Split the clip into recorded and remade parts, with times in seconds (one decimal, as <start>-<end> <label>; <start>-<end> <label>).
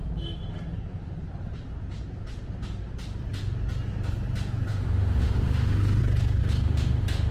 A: 0.0-4.7 recorded; 4.7-6.0 remade; 6.0-6.4 recorded; 6.4-7.3 remade